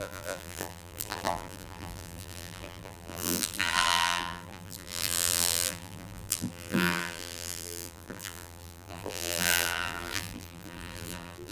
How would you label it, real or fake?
fake